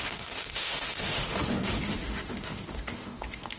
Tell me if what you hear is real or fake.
fake